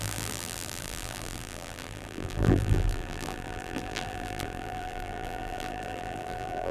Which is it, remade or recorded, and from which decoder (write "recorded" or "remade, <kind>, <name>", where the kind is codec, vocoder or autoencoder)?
remade, vocoder, BigVGAN v2